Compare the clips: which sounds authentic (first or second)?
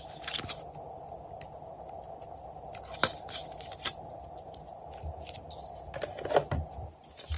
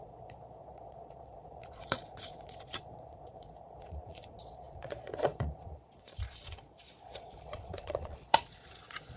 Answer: first